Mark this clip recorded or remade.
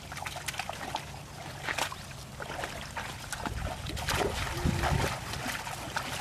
recorded